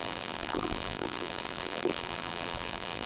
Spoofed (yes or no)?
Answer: yes